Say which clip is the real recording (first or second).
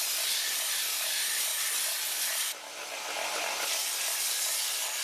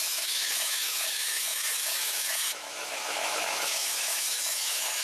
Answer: first